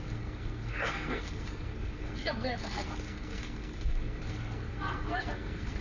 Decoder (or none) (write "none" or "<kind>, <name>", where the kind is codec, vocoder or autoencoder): codec, SNAC